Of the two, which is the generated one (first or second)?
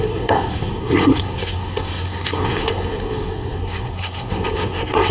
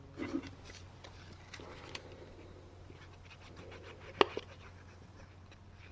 first